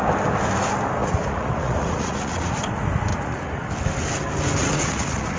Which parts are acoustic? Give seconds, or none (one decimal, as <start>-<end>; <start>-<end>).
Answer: 0.0-1.0; 2.6-3.1; 3.7-4.6